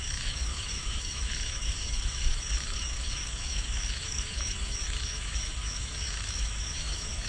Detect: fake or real fake